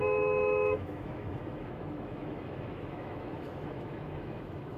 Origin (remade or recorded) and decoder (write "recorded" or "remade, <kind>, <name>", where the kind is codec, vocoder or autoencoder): remade, autoencoder, DAC-VAE